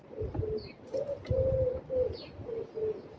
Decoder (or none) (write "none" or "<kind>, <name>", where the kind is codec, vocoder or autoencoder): none